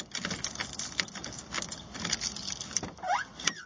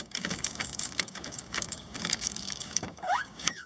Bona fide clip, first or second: first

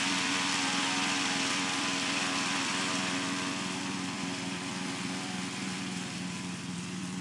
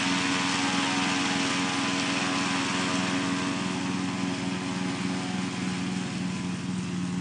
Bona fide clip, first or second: second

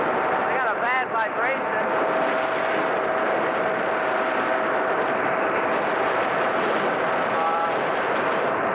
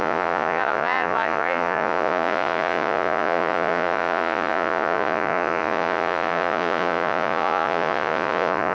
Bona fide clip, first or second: first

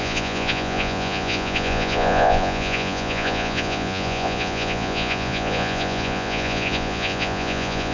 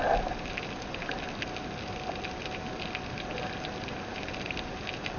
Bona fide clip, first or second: second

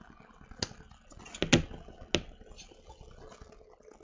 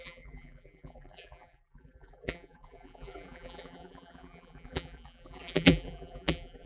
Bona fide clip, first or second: first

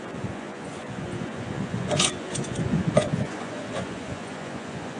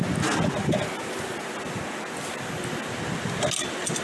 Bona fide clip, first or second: second